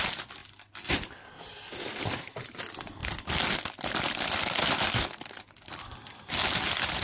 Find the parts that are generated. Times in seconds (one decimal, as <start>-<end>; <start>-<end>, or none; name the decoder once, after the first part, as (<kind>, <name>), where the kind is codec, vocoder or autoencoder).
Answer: none